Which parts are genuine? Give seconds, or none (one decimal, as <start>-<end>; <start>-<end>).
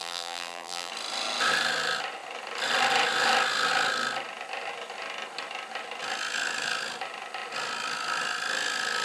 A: 0.9-9.0